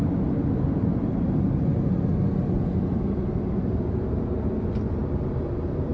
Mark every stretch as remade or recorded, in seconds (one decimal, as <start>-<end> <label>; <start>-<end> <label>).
0.0-5.9 recorded